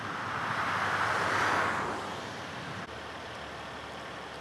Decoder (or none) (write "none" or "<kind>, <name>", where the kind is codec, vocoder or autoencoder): none